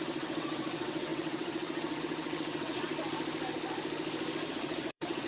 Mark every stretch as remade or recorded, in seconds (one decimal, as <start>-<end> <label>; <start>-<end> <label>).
0.0-2.9 remade; 2.9-4.5 recorded; 4.5-5.3 remade